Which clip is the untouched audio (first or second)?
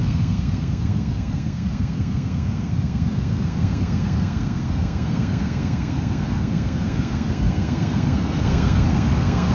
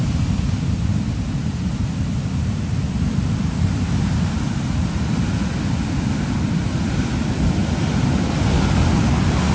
second